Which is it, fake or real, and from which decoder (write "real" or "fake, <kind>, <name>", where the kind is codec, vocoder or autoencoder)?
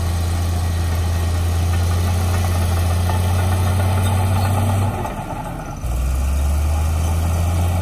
real